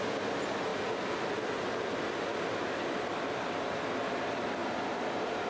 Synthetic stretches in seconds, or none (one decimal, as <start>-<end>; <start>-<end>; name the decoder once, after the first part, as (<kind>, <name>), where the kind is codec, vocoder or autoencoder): none